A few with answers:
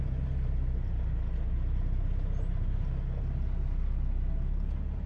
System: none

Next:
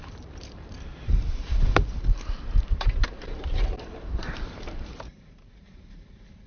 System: vocoder, BigVGAN v2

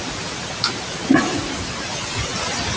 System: none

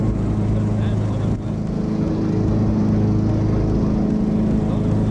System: none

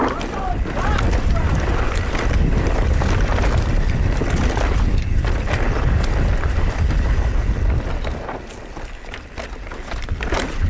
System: none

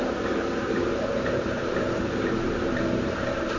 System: vocoder, BigVGAN v2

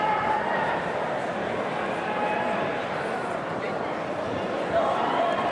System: vocoder, BigVGAN v2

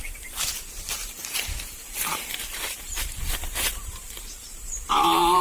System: vocoder, BigVGAN v2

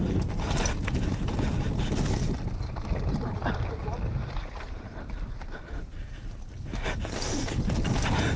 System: none